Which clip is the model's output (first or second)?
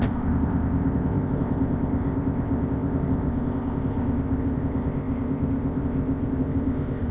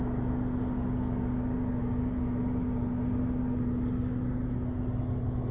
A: first